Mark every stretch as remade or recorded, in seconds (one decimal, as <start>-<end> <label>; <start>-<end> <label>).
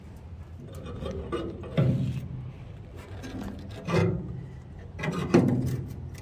0.0-6.2 recorded